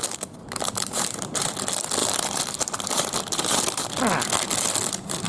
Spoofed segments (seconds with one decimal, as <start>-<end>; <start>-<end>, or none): 0.4-1.5; 2.0-3.9